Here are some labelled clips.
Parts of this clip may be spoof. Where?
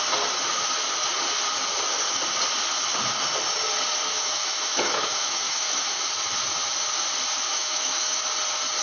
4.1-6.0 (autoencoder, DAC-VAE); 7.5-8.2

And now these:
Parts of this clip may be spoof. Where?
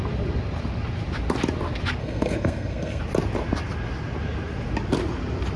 2.0-3.0 (codec, SNAC)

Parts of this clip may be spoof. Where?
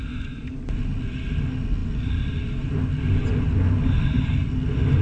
none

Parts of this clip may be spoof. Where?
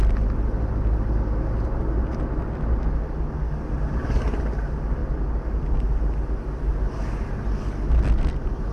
none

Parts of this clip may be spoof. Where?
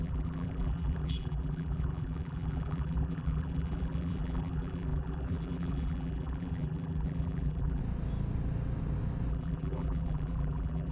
0.0-7.8 (vocoder, BigVGAN v2); 9.3-10.9